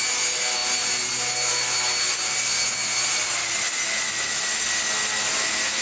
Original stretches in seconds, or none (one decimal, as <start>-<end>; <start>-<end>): 0.0-5.8